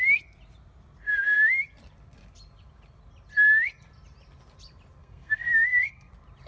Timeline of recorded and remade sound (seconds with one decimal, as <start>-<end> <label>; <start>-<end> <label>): 0.0-5.0 recorded; 5.0-6.1 remade; 6.1-6.5 recorded